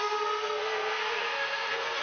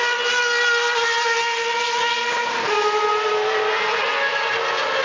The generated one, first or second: first